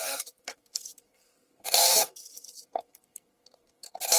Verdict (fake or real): fake